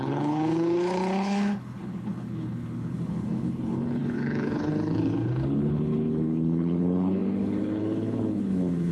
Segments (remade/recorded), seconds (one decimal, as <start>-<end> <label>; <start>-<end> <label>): 0.0-8.9 remade

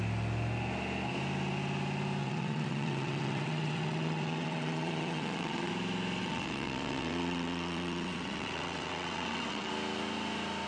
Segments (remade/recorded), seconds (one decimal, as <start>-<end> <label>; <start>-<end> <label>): 0.0-2.2 recorded; 2.2-5.7 remade; 5.7-6.2 recorded; 6.2-9.7 remade; 9.7-10.7 recorded